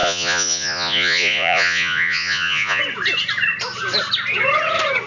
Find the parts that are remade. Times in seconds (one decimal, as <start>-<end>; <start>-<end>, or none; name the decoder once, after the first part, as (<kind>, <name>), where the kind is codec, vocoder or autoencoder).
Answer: 0.0-2.8 (vocoder, Vocos)